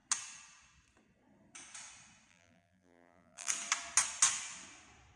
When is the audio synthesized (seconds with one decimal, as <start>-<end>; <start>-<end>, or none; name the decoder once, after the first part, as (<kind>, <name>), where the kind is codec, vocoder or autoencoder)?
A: 2.3-3.5 (vocoder, BigVGAN v2)